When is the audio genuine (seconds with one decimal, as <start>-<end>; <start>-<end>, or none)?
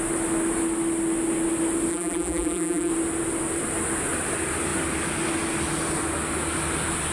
0.0-1.9; 2.9-7.1